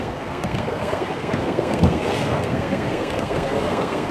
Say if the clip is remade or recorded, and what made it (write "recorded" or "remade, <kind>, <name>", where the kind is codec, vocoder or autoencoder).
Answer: remade, codec, SNAC